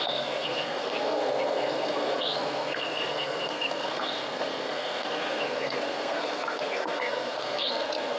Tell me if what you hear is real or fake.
fake